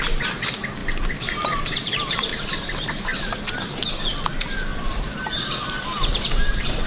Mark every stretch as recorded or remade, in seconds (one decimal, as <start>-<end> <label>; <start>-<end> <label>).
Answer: 0.0-0.8 recorded; 0.8-2.6 remade; 2.6-4.7 recorded; 4.7-5.8 remade; 5.8-6.9 recorded